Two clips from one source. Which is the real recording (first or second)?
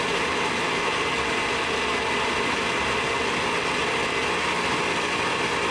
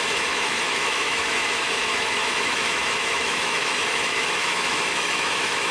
first